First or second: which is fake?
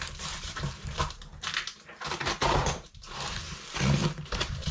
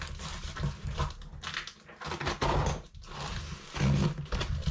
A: first